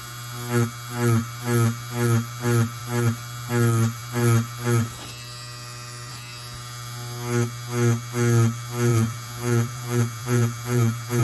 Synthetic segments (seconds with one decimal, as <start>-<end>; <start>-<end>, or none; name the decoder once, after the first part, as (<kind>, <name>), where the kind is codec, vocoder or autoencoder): 8.9-11.2 (vocoder, Vocos)